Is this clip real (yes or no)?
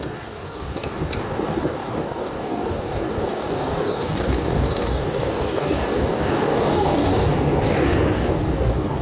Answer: no